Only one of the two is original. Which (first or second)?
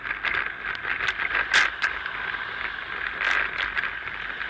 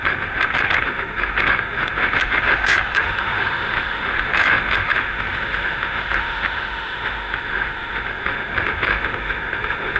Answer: first